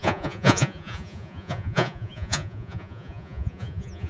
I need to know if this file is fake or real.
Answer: fake